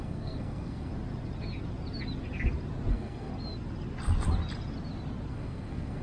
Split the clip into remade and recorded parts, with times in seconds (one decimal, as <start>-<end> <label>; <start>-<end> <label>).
0.0-0.9 remade; 0.9-2.9 recorded; 2.9-3.3 remade; 3.3-5.3 recorded; 5.3-6.0 remade